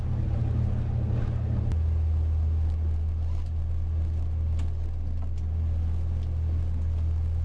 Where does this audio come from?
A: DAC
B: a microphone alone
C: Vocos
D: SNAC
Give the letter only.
B